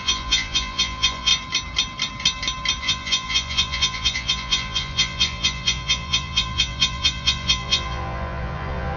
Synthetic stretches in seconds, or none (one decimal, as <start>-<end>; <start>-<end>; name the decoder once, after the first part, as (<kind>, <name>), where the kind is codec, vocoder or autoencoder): 0.0-1.3 (vocoder, Vocos); 2.8-9.0